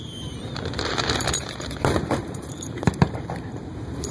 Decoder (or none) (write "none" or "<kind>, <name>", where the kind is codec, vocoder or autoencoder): vocoder, BigVGAN v2